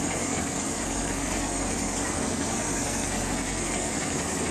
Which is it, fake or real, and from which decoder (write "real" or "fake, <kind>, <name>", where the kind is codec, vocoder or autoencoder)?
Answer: fake, codec, SNAC